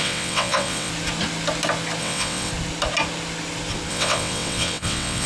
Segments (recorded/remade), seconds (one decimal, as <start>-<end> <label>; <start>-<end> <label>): 0.0-0.9 remade; 0.9-2.0 recorded; 2.0-2.5 remade; 2.5-3.9 recorded; 3.9-5.3 remade